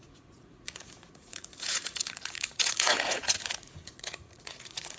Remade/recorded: remade